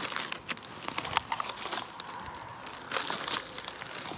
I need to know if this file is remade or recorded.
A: recorded